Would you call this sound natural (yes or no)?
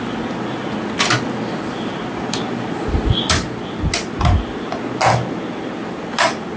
yes